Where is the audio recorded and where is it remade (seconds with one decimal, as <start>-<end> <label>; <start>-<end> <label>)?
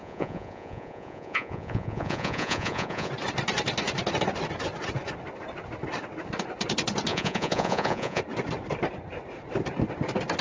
0.0-3.1 remade; 3.1-7.1 recorded; 7.1-8.2 remade; 8.2-10.4 recorded